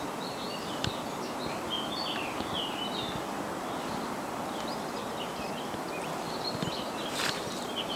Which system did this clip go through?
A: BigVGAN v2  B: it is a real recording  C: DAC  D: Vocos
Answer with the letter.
B